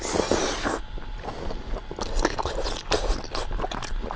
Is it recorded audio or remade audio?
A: recorded